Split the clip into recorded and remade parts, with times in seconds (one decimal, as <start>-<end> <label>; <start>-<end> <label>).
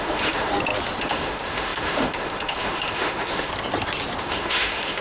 0.0-0.5 remade; 0.5-1.0 recorded; 1.0-3.5 remade; 3.5-4.2 recorded; 4.2-5.0 remade